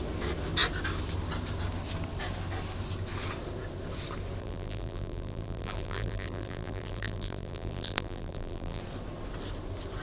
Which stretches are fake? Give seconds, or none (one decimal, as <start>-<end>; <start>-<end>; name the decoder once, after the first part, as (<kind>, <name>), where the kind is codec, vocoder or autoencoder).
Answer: 4.4-8.8 (vocoder, BigVGAN v2)